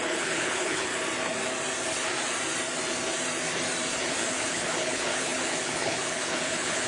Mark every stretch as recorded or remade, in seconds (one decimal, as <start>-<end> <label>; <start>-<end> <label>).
0.0-0.9 remade; 0.9-4.0 recorded; 4.0-6.9 remade